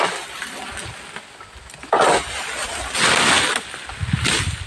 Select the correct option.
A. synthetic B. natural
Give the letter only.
B